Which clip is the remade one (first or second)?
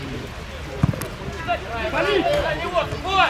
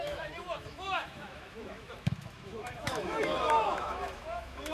second